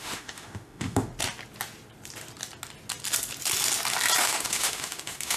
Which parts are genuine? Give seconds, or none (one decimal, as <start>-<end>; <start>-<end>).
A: 1.1-4.2